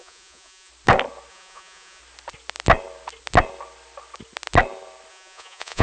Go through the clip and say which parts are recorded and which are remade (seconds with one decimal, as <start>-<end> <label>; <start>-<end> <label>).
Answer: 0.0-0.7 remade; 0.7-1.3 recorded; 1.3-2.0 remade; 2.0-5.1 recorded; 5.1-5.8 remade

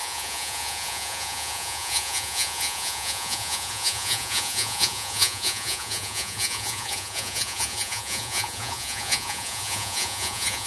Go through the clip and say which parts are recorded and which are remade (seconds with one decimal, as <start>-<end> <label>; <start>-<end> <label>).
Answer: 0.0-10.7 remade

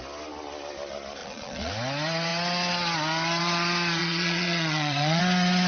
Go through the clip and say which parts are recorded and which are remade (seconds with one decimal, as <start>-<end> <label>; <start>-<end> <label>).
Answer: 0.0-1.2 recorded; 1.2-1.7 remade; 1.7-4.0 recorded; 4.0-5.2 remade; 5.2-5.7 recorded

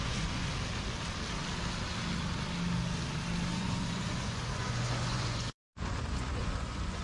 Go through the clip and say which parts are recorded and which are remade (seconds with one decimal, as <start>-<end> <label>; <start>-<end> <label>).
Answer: 0.0-0.5 remade; 0.5-3.6 recorded; 3.6-7.0 remade

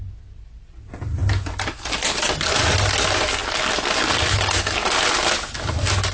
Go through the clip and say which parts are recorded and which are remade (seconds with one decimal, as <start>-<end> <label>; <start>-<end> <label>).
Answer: 0.0-6.1 recorded